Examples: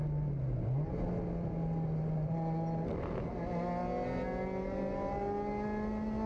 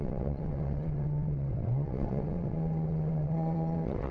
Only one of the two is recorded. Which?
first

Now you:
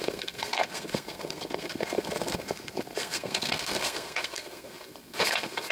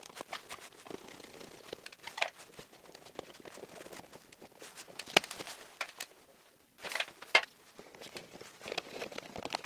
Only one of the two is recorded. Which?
second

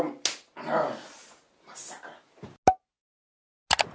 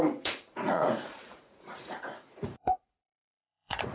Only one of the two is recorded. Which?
first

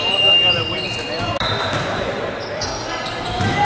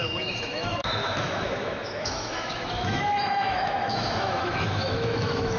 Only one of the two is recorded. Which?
first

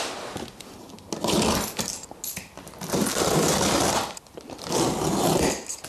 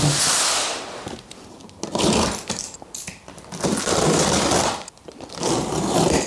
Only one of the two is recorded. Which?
first